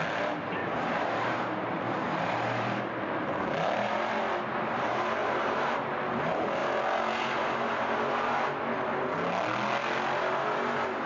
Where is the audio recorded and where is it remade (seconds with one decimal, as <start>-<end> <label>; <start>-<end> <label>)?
0.0-0.6 recorded; 0.6-4.2 remade; 4.2-5.2 recorded; 5.2-5.7 remade; 5.7-6.6 recorded; 6.6-8.1 remade; 8.1-11.1 recorded